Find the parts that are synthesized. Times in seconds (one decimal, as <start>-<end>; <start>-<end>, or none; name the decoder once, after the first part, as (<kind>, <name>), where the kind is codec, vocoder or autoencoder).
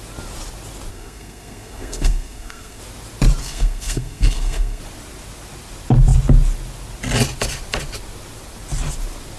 0.9-2.8 (codec, SNAC); 3.4-4.8